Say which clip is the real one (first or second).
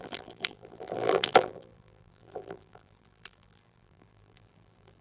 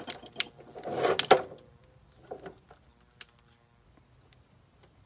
second